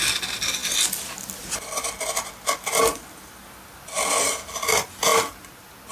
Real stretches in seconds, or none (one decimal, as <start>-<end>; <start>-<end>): 0.0-5.9